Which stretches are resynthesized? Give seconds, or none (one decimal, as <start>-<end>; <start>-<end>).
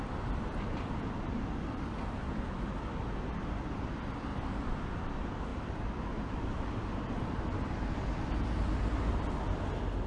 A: none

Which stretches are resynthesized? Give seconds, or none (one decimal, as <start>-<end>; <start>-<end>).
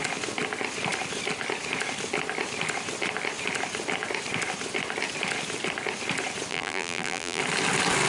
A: 6.5-7.4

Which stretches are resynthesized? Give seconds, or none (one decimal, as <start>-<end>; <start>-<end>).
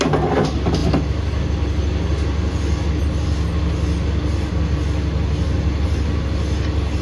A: none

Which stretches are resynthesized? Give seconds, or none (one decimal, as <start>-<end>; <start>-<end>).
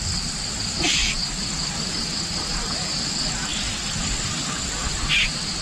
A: none